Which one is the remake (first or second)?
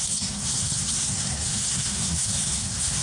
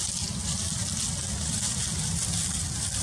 first